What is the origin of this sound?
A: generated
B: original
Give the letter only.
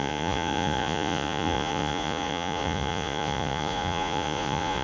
A